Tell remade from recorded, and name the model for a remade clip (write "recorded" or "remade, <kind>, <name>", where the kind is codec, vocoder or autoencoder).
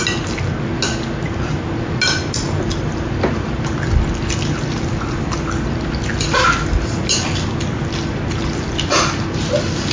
recorded